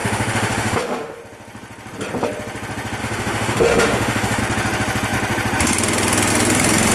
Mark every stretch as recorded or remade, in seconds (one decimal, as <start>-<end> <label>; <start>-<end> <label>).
0.0-1.2 remade; 1.2-3.0 recorded; 3.0-4.4 remade; 4.4-6.9 recorded